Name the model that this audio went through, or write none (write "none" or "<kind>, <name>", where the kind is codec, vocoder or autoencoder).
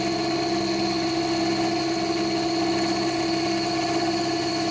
none